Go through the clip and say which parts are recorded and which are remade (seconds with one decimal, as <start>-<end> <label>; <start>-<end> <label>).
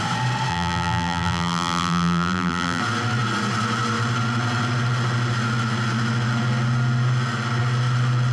0.0-0.5 recorded; 0.5-2.8 remade; 2.8-8.3 recorded